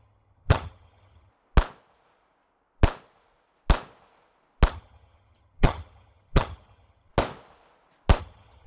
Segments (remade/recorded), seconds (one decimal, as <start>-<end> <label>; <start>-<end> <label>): 0.0-1.3 remade; 1.3-4.7 recorded; 4.7-7.1 remade; 7.1-8.2 recorded; 8.2-8.7 remade